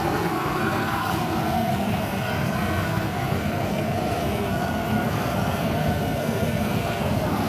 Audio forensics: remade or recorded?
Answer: remade